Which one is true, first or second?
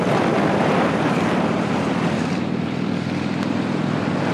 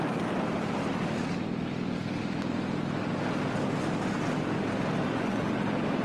second